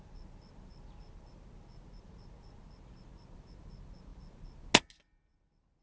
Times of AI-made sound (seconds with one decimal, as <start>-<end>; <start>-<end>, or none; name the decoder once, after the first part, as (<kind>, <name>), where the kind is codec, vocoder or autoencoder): none

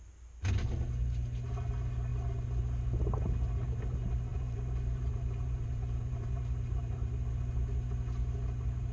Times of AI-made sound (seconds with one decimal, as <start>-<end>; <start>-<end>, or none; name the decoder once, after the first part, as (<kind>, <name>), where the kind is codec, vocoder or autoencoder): 4.3-7.4 (vocoder, BigVGAN v2)